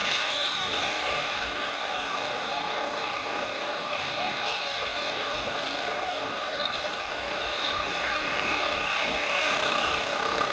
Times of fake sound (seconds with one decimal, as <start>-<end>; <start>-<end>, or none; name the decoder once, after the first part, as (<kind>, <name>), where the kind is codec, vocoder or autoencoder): 0.0-10.5 (codec, DAC)